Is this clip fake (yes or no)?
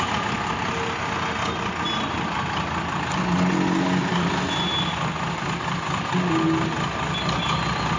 no